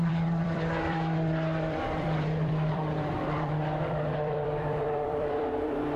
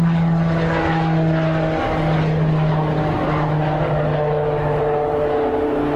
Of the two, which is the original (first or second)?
second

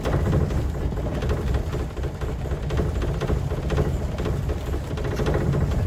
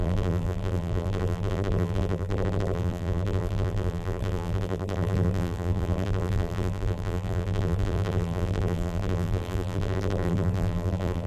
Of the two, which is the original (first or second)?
first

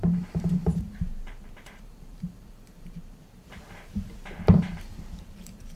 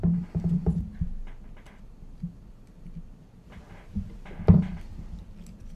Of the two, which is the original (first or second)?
second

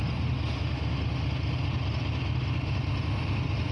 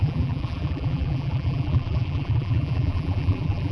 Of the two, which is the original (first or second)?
first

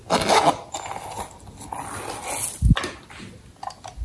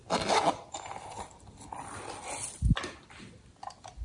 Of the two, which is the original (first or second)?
first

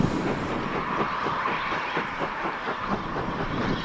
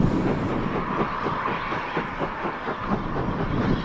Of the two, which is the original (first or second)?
second